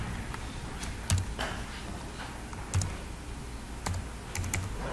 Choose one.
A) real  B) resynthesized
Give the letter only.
A